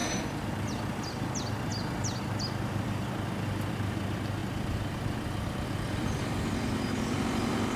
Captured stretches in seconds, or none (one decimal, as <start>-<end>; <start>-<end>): 0.5-7.8